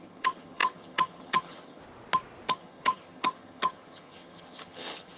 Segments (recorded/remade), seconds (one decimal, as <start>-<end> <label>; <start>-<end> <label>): 0.0-1.8 remade; 1.8-2.5 recorded; 2.5-5.2 remade